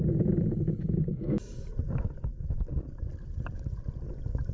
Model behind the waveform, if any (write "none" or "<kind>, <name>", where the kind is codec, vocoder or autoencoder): none